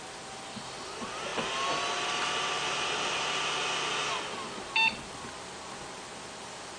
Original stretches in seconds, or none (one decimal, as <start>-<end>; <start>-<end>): 0.0-6.8